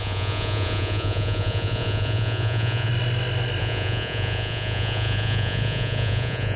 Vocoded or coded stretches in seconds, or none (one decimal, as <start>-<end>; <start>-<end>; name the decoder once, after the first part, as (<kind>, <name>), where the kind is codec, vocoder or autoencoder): 0.0-2.9 (vocoder, Vocos); 3.6-6.6